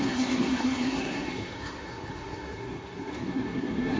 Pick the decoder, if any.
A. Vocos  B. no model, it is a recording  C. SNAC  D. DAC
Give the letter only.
C